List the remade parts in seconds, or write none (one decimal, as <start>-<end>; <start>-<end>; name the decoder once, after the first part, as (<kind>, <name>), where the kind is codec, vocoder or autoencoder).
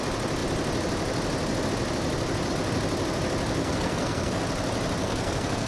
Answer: 3.6-4.4 (codec, SNAC); 5.0-5.7